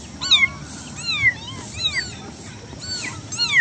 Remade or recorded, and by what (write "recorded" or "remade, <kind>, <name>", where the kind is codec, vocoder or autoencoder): recorded